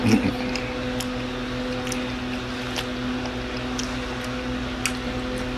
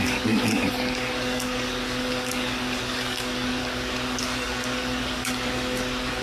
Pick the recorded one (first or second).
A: first